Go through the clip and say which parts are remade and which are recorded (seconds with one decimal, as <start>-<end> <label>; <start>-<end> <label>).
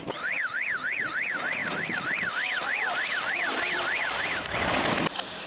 0.0-5.5 recorded